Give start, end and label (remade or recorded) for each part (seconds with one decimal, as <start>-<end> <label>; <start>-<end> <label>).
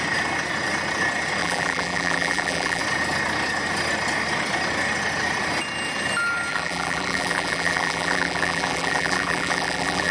0.0-1.4 recorded; 1.4-2.8 remade; 2.8-6.5 recorded; 6.5-10.1 remade